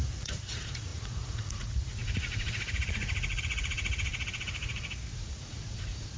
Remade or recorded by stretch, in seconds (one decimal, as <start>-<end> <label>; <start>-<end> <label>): 0.0-6.2 remade